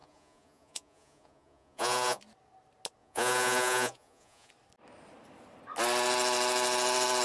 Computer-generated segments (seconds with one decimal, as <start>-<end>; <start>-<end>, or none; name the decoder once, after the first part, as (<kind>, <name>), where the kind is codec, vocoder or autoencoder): 0.0-2.2 (vocoder, Vocos); 3.0-4.5